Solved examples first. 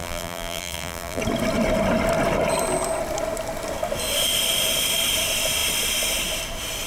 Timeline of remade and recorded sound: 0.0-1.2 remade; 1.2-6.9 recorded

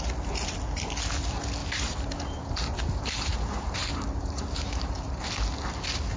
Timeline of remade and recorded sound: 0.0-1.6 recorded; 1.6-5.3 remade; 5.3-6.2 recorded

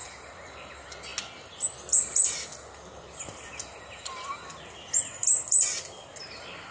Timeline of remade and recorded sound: 0.0-6.7 recorded

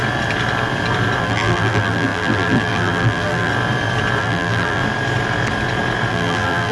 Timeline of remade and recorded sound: 0.0-1.2 recorded; 1.2-3.5 remade; 3.5-4.2 recorded; 4.2-4.8 remade; 4.8-6.1 recorded; 6.1-6.7 remade